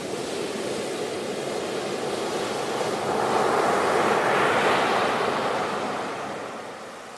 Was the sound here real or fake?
real